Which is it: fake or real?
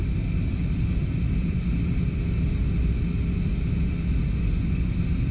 real